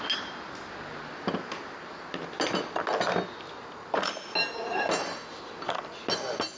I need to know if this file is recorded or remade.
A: recorded